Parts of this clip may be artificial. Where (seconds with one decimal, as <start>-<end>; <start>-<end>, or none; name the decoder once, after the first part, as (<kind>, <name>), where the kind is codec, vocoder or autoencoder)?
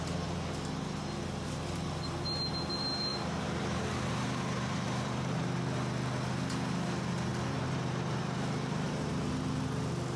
3.1-5.6 (vocoder, BigVGAN v2); 7.3-9.3